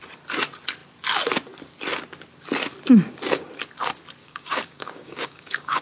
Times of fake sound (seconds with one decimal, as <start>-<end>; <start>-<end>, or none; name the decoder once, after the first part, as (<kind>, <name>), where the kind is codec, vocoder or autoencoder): 4.2-5.8 (codec, DAC)